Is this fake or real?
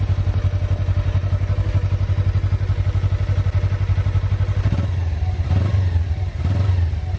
real